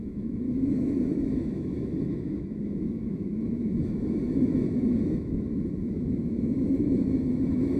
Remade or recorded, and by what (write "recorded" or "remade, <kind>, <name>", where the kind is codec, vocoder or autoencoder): remade, autoencoder, DAC-VAE